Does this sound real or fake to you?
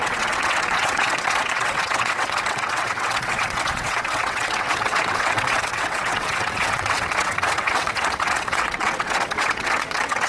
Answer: fake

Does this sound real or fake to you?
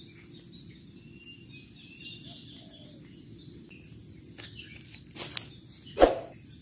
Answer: real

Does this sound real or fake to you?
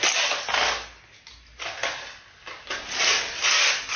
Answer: real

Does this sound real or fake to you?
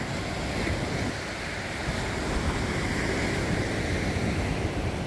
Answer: real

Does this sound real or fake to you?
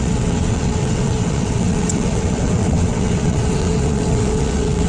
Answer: fake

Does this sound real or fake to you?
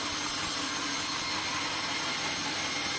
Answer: real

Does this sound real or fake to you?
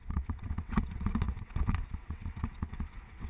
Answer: fake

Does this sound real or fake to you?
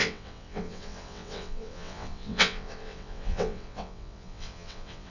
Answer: fake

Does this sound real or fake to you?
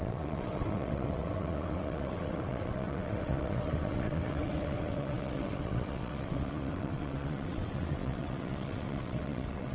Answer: fake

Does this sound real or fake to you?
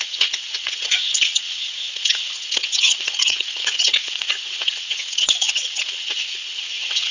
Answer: fake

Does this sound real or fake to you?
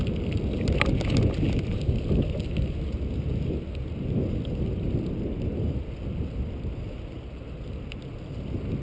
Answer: real